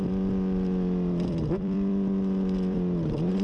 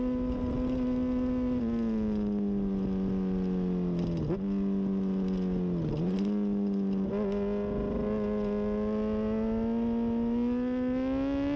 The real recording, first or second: second